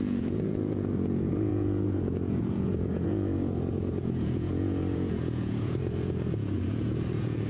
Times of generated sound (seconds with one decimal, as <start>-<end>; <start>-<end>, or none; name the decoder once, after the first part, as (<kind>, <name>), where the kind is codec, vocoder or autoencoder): 0.0-7.5 (vocoder, Vocos)